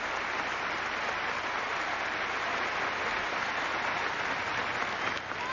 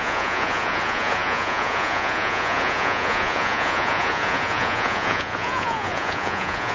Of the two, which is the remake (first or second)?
second